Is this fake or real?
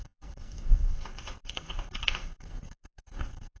fake